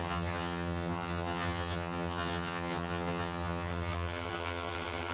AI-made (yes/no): yes